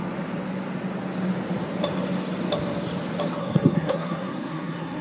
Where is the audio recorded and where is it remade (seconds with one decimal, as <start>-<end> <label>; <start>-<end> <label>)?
0.0-3.4 recorded; 3.4-5.0 remade